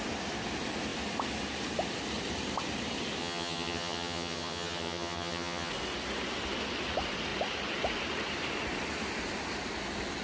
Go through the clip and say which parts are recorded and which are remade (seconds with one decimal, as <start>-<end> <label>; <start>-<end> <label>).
0.0-3.2 recorded; 3.2-5.7 remade; 5.7-10.2 recorded